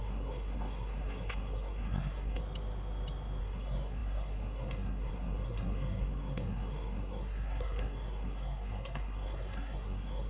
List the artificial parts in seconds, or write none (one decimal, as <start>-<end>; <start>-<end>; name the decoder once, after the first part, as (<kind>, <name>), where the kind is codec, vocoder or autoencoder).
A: 0.0-2.4 (codec, SNAC); 3.4-10.3